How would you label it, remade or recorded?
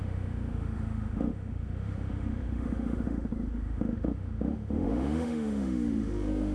remade